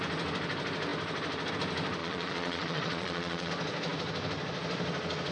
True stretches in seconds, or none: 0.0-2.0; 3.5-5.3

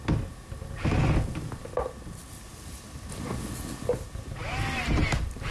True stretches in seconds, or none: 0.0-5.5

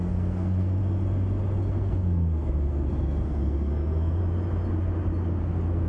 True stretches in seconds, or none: 0.8-1.7; 4.2-5.4

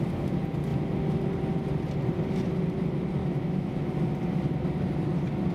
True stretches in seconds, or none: 0.0-3.2; 3.9-5.5